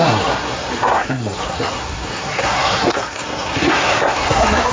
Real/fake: fake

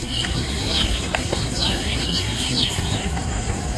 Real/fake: fake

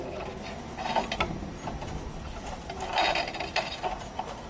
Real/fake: real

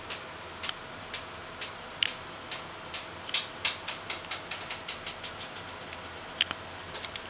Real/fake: real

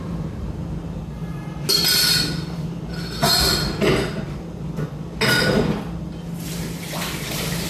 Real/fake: real